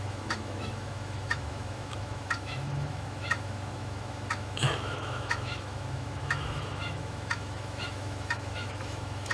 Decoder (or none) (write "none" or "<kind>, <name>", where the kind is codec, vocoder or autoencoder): autoencoder, DAC-VAE